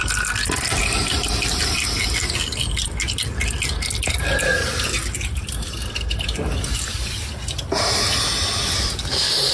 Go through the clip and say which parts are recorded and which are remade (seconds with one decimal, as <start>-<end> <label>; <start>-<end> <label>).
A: 0.0-9.5 recorded